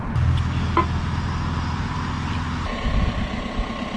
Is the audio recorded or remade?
recorded